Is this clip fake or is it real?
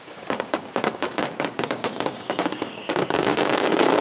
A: fake